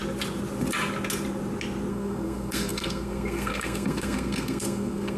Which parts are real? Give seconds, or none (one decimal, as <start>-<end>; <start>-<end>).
0.0-1.9